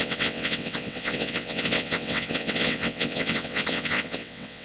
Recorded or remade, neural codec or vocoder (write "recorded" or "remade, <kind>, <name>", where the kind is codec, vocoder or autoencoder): remade, vocoder, WaveNeXt